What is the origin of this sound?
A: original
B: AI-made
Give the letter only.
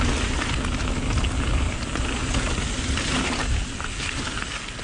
A